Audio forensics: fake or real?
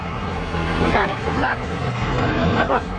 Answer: fake